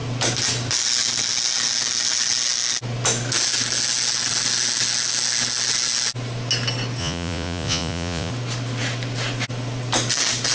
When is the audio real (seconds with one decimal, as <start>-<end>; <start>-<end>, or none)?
0.0-7.0; 8.3-10.5